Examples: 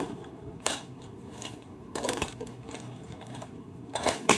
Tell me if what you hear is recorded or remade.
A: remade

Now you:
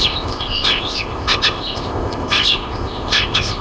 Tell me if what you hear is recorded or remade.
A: remade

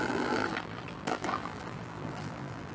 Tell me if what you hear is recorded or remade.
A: remade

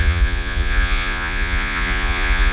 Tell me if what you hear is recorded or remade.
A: remade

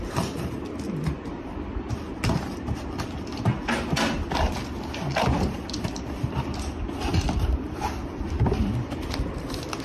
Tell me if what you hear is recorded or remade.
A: remade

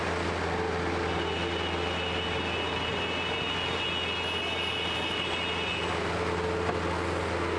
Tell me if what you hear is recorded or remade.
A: recorded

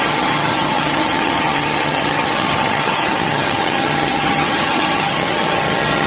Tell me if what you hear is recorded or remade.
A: remade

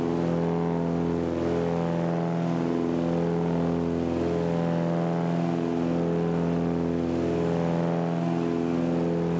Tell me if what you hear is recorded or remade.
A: recorded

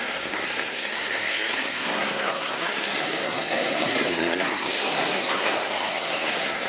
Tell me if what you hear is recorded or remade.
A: remade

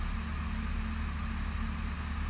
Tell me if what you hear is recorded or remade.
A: recorded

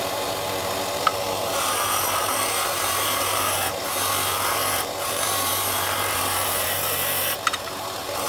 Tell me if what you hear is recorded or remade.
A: remade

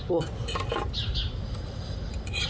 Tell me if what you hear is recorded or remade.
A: recorded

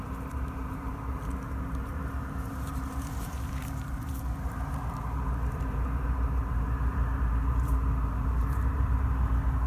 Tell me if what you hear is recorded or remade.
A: remade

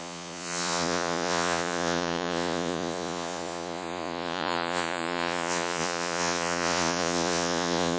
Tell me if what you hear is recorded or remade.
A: remade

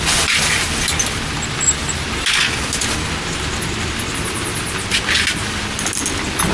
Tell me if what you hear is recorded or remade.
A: recorded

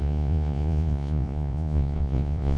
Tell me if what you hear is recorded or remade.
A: remade